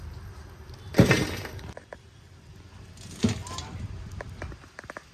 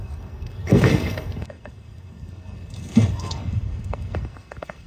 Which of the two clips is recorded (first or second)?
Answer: first